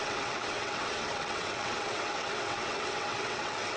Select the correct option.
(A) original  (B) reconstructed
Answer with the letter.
B